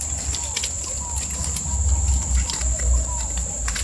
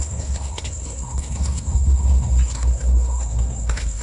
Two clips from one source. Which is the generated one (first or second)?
second